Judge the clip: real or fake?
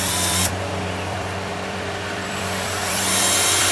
fake